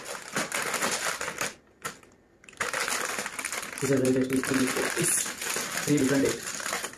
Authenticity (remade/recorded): recorded